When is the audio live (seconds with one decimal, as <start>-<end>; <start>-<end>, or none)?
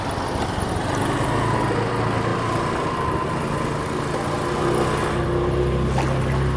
0.0-6.6